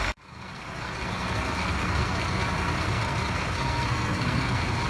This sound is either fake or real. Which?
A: fake